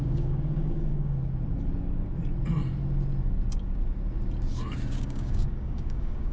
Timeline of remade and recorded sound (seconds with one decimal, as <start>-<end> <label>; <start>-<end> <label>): 0.0-1.2 remade; 1.2-5.0 recorded; 5.0-6.3 remade